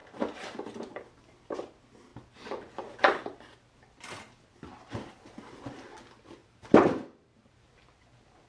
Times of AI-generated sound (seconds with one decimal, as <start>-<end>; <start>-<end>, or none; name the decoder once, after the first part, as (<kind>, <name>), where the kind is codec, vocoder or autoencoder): 0.0-1.0 (vocoder, BigVGAN v2); 6.4-7.7